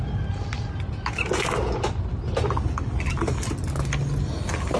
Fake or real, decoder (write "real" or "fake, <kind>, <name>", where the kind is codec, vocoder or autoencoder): real